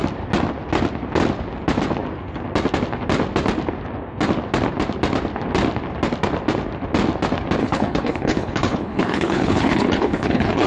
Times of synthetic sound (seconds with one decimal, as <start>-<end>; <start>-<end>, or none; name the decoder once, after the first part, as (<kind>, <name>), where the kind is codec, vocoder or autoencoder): 7.6-10.7 (codec, HILCodec)